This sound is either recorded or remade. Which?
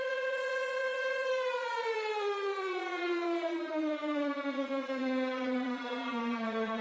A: remade